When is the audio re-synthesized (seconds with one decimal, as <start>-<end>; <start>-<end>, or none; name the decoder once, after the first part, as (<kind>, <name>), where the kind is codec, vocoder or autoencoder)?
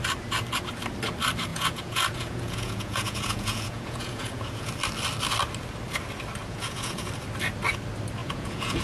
1.5-4.7 (vocoder, Vocos); 6.4-7.1; 8.2-8.8